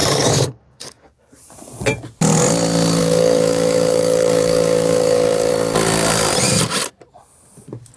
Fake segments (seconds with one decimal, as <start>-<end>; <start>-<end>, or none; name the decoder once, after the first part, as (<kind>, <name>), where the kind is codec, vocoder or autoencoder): 0.0-1.2 (codec, DAC); 3.0-5.5